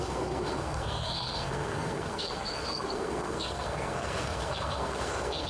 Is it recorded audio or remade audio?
remade